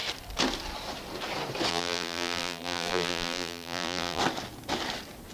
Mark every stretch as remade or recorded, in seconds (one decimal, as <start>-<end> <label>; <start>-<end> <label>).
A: 0.0-1.7 recorded; 1.7-4.2 remade; 4.2-5.3 recorded